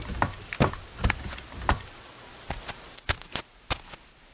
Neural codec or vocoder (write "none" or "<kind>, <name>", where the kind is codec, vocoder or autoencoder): none